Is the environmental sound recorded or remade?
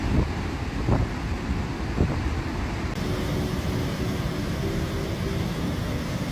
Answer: recorded